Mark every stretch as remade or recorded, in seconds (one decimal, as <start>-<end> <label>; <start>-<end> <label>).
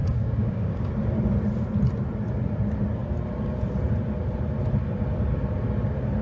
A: 0.0-0.7 remade; 0.7-6.2 recorded